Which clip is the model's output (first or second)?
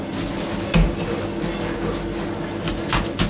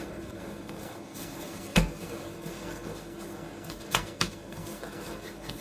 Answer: second